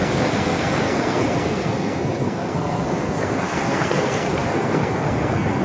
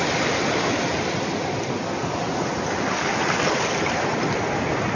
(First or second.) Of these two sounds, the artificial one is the first